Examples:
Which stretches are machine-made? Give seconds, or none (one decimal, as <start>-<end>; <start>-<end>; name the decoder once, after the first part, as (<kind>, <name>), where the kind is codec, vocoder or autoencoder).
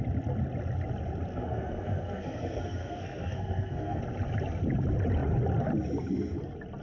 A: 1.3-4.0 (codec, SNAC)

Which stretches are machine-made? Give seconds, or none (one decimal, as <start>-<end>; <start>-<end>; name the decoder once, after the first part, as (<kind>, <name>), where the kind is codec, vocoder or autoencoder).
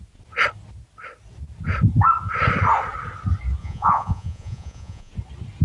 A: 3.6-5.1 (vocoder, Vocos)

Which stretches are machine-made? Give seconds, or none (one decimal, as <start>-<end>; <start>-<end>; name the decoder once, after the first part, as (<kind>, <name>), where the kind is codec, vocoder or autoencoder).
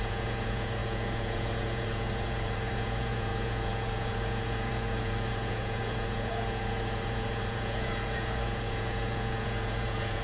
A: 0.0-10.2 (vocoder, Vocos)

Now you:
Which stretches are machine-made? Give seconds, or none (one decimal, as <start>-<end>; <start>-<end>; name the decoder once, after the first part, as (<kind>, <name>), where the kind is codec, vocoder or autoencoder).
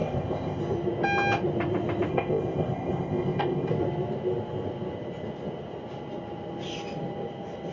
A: 0.0-0.6 (codec, ZipCodec); 2.1-3.7